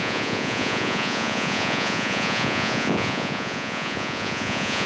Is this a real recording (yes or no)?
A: no